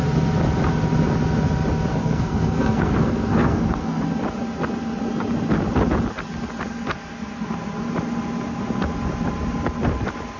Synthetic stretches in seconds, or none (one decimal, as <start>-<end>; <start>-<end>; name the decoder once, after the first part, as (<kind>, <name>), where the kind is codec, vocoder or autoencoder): 1.9-4.0 (codec, SNAC)